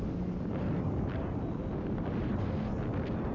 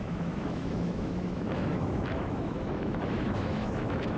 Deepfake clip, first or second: second